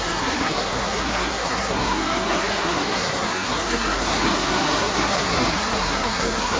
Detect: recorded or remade remade